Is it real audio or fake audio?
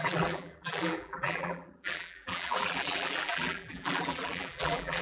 fake